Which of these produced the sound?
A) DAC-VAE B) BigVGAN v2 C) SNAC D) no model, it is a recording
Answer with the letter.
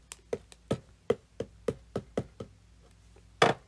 D